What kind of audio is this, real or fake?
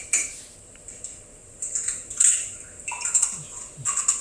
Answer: real